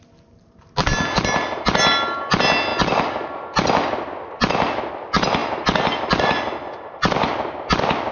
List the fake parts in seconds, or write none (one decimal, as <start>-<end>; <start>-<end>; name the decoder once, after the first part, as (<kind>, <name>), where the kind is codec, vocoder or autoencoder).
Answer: none